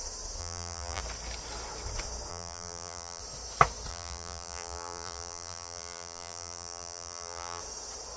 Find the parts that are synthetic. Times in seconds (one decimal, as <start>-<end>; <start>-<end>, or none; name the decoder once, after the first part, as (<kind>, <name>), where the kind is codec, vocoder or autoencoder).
0.4-1.0 (vocoder, BigVGAN v2); 2.3-3.2; 3.9-7.6